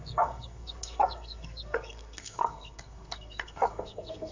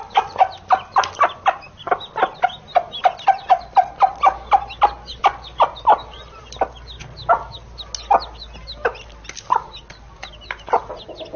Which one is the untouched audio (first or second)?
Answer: second